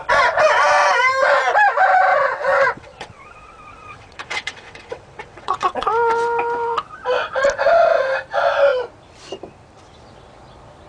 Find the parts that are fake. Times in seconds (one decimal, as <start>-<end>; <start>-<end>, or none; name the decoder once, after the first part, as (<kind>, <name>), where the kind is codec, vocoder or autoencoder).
2.1-5.9 (vocoder, WaveNeXt)